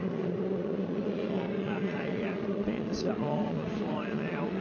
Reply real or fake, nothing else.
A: fake